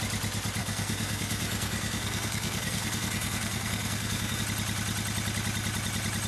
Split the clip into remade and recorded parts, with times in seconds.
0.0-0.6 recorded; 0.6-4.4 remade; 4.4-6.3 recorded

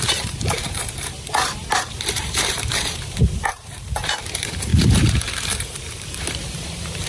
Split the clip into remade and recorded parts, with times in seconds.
0.0-7.1 remade

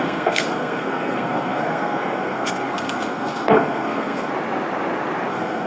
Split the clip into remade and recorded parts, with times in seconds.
0.0-4.3 remade; 4.3-5.3 recorded; 5.3-5.7 remade

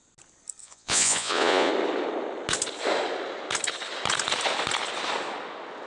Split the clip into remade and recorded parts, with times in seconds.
0.0-0.6 recorded; 0.6-1.7 remade; 1.7-5.9 recorded

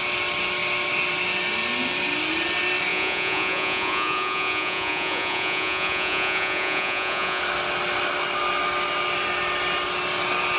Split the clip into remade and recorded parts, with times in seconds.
0.0-2.9 recorded; 2.9-7.4 remade; 7.4-10.6 recorded

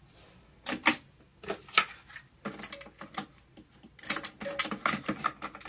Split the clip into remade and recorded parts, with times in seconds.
0.0-5.7 recorded

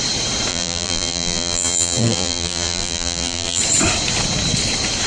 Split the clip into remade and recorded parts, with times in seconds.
0.0-0.5 recorded; 0.5-3.6 remade; 3.6-5.1 recorded

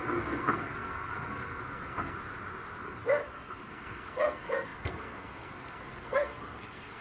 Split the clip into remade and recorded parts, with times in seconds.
0.0-2.2 remade; 2.2-2.8 recorded; 2.8-3.2 remade; 3.2-3.7 recorded; 3.7-7.0 remade